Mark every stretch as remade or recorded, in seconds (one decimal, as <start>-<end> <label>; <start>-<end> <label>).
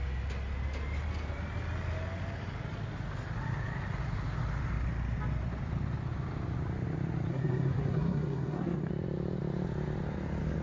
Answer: 0.0-7.3 recorded; 7.3-8.9 remade; 8.9-10.6 recorded